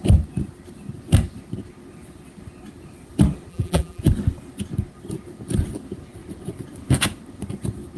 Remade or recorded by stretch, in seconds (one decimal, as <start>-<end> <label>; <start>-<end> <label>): 0.0-3.5 recorded; 3.5-4.0 remade; 4.0-8.0 recorded